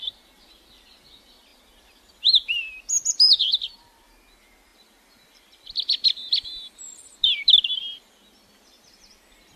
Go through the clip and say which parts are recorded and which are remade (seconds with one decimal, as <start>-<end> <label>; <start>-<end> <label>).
0.0-4.7 recorded; 4.7-9.0 remade; 9.0-9.6 recorded